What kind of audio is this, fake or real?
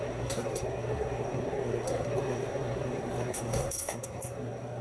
fake